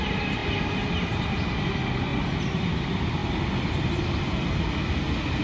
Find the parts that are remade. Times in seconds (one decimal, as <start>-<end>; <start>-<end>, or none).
0.4-0.9; 2.1-2.7